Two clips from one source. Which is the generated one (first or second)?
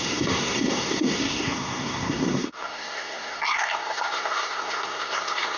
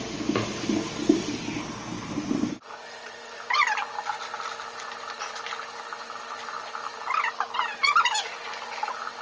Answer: first